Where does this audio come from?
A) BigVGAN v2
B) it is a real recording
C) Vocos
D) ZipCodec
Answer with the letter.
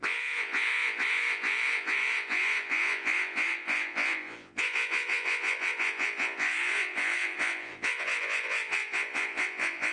C